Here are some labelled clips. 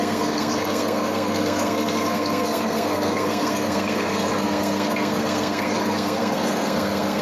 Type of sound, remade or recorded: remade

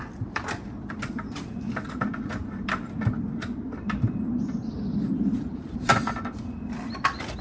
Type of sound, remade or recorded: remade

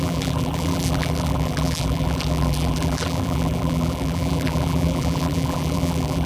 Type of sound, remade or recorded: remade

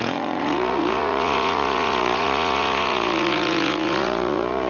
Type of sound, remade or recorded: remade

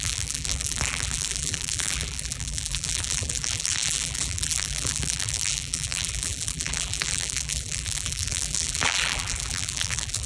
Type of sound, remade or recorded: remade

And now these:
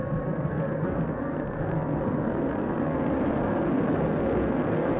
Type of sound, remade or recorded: remade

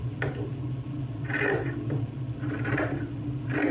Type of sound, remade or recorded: recorded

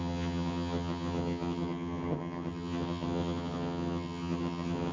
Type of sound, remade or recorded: remade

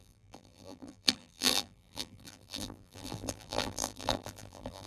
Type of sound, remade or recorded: remade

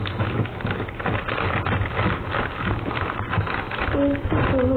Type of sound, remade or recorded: recorded